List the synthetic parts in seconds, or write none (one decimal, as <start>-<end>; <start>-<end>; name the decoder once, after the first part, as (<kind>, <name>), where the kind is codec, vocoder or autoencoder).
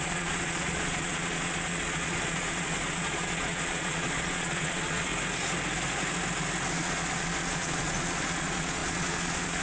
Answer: 0.0-5.1 (vocoder, Vocos); 6.7-9.6